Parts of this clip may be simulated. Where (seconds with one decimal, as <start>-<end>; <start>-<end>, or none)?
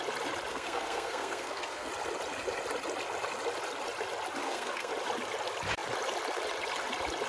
0.5-1.9; 4.4-4.9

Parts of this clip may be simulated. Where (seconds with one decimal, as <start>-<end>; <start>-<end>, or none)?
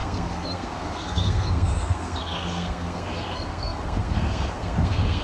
0.0-5.2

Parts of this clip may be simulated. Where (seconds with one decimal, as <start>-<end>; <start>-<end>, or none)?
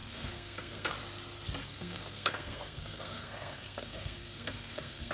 0.0-0.9; 1.6-5.1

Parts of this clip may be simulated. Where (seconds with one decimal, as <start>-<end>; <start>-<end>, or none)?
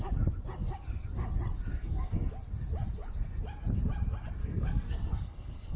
1.7-2.3; 4.4-5.8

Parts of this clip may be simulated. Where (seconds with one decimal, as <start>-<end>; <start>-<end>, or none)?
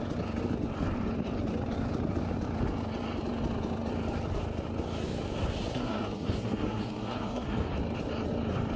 5.7-7.7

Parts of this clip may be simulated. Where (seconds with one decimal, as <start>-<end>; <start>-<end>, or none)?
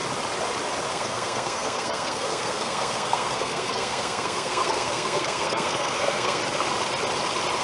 0.9-6.4